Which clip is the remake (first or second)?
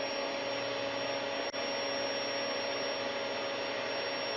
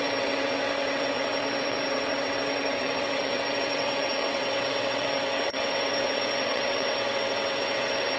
second